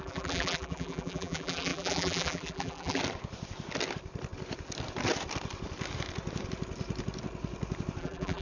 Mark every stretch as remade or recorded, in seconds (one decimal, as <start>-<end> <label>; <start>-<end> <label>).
0.0-3.0 remade; 3.0-8.0 recorded; 8.0-8.4 remade